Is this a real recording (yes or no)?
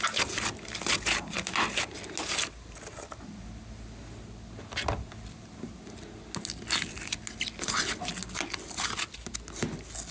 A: yes